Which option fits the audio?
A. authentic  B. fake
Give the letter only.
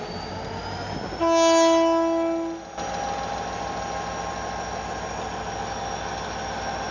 A